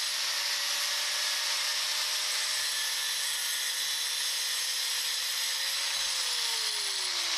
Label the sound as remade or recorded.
recorded